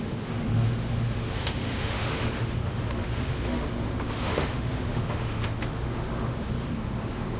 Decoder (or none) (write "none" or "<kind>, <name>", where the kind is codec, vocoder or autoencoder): autoencoder, DAC-VAE